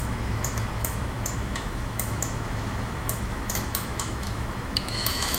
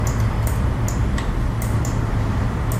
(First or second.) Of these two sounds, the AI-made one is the first